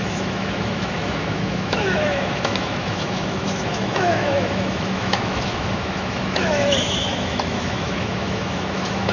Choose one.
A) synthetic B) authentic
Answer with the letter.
A